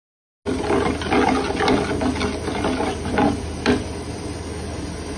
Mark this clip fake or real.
real